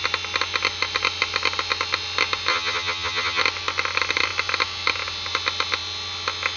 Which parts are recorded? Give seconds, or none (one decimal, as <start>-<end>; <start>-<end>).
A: 0.0-2.5; 3.4-6.6